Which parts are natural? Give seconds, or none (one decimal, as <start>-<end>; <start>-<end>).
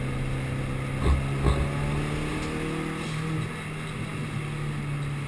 0.0-5.3